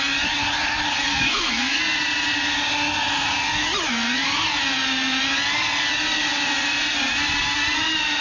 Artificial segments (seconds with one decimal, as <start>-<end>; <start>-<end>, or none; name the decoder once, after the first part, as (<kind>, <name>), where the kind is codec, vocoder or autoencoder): 1.1-1.8 (codec, SNAC)